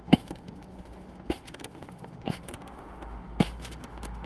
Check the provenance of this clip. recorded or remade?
remade